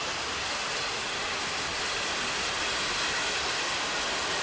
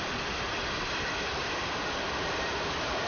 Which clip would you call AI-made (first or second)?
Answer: second